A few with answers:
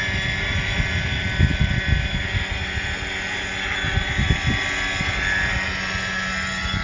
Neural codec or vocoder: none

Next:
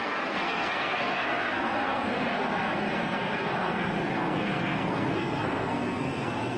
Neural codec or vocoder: codec, SNAC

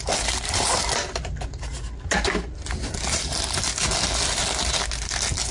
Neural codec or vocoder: none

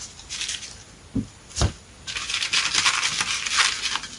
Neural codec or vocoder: none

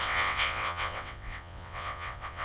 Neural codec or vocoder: vocoder, WaveNeXt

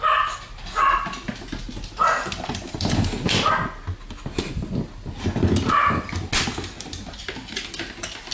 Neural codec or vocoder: none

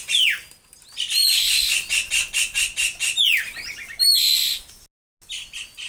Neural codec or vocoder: none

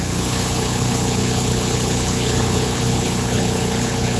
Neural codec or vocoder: codec, HILCodec